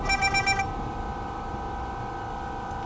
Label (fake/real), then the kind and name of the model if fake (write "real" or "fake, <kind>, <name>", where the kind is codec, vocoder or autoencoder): real